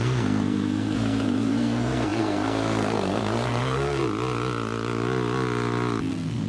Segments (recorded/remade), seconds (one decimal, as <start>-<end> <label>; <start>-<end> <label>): 0.0-4.0 remade; 4.0-6.1 recorded; 6.1-6.5 remade